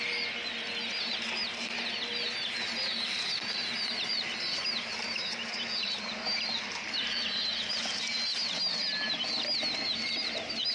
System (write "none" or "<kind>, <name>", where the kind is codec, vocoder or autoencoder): none